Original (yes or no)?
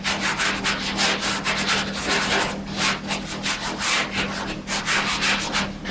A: yes